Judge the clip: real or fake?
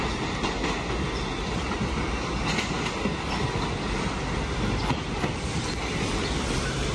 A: real